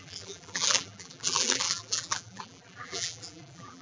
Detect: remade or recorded remade